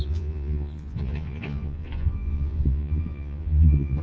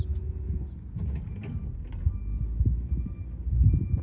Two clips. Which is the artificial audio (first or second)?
first